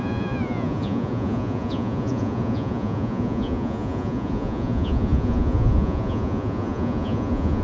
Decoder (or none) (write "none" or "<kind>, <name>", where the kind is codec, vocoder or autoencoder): vocoder, Vocos